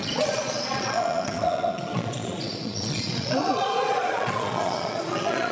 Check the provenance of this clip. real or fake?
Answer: fake